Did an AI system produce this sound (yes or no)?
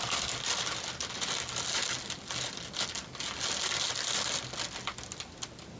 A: no